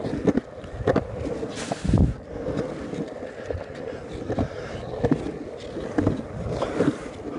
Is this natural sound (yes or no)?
yes